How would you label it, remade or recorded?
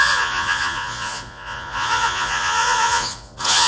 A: remade